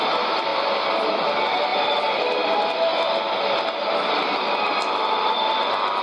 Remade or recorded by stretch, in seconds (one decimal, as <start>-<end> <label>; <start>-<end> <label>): 0.0-0.5 remade; 0.5-1.1 recorded; 1.1-2.9 remade; 2.9-4.4 recorded; 4.4-6.0 remade